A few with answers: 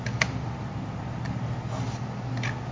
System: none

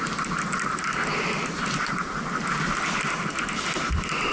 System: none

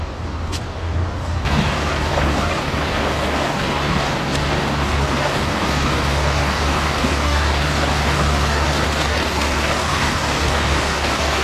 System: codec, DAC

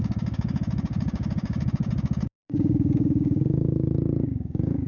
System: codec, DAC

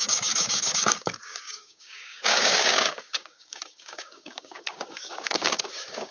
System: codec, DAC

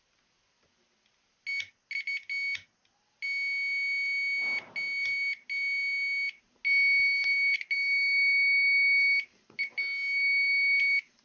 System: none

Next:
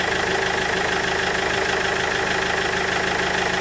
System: none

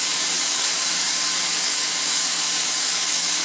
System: codec, DAC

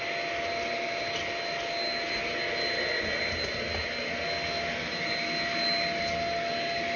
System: none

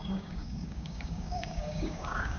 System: codec, DAC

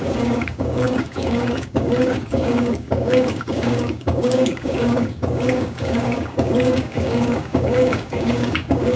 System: codec, DAC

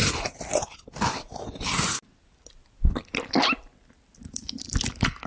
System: none